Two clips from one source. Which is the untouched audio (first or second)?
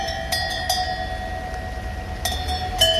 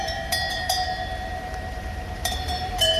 first